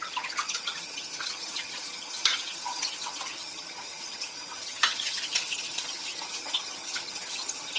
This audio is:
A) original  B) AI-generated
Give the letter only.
B